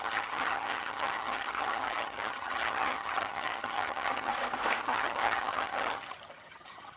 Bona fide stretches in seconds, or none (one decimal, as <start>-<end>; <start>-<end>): 4.3-4.8